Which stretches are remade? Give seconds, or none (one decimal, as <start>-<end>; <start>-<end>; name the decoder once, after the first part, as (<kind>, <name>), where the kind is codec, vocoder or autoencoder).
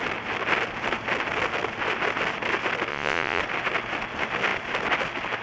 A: 2.9-3.4 (vocoder, Vocos)